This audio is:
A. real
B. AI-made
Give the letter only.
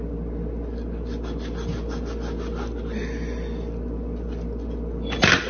A